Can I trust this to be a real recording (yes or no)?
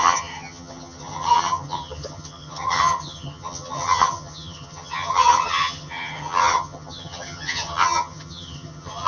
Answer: no